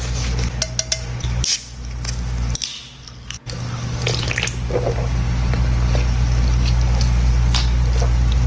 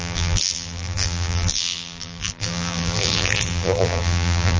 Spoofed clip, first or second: second